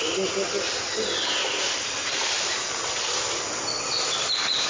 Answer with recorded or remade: recorded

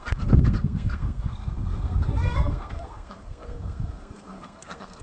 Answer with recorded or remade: remade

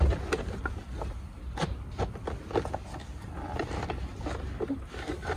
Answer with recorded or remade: recorded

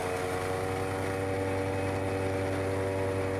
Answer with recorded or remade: recorded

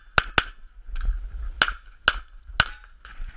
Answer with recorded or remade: recorded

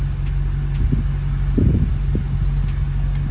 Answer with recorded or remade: recorded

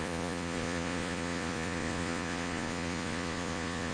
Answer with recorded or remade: remade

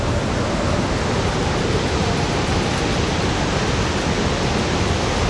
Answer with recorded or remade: recorded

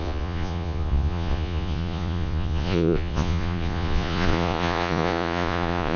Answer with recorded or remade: remade